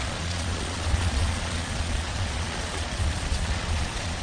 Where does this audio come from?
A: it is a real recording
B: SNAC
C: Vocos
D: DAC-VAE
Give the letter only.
C